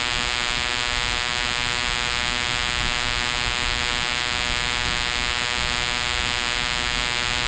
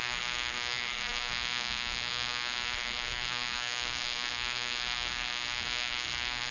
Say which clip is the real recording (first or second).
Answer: first